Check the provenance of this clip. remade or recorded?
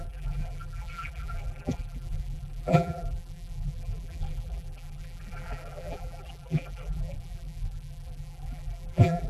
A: remade